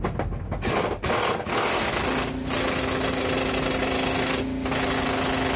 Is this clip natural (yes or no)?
yes